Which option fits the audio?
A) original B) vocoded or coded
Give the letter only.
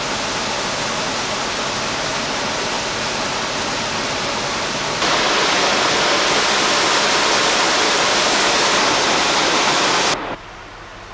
A